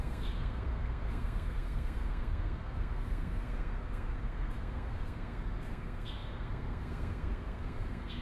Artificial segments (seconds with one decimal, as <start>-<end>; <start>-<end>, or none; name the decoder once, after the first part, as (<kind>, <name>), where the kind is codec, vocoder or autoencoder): 0.0-8.2 (codec, SNAC)